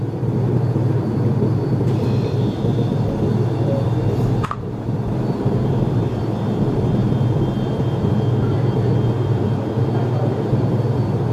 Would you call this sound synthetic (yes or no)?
yes